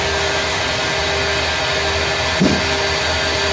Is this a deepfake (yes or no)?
no